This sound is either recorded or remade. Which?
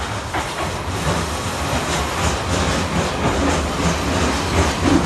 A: recorded